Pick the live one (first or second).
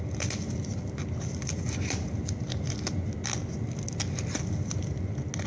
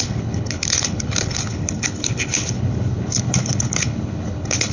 first